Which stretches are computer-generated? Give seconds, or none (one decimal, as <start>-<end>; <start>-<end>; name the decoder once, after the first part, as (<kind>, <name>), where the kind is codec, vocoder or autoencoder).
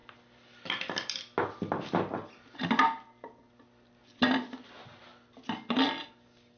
none